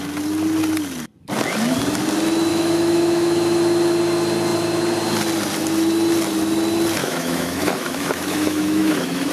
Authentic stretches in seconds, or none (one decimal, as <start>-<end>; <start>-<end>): 0.0-2.5; 3.6-7.0